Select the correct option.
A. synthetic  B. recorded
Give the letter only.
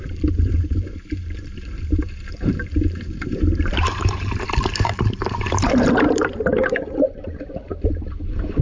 A